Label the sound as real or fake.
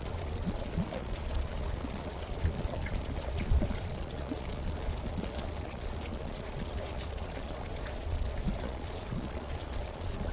fake